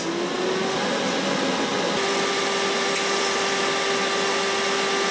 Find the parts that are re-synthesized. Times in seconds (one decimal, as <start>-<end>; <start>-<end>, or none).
none